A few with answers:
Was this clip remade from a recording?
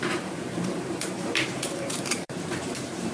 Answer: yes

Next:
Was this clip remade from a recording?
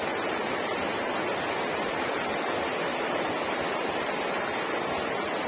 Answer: no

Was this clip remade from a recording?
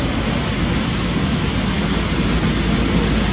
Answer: no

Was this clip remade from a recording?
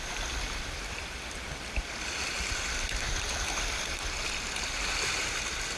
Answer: yes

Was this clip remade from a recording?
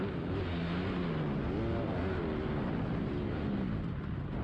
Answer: no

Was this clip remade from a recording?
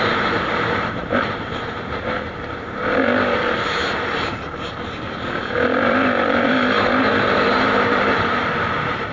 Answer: yes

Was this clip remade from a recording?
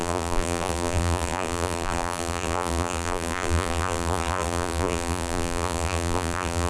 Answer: yes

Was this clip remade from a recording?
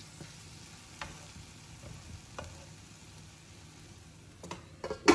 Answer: no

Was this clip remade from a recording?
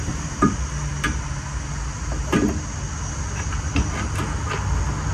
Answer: no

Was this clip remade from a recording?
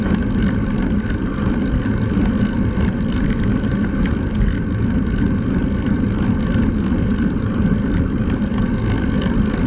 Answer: no